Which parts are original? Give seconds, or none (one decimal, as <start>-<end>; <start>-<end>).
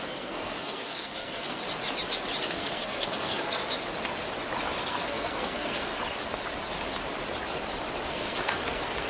1.6-2.4; 3.6-4.8; 5.9-8.1